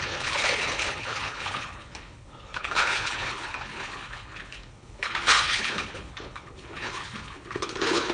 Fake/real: fake